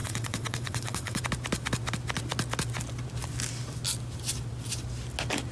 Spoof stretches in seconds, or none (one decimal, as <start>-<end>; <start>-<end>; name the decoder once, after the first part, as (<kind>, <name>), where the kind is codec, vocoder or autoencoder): 0.0-1.2 (vocoder, WaveNeXt)